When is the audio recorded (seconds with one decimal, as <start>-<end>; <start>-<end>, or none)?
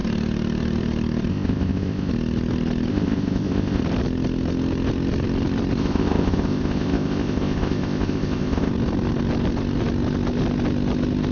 0.0-1.3; 2.1-2.9; 3.8-5.8; 8.7-11.3